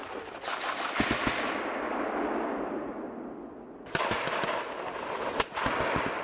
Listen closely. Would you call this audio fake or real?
real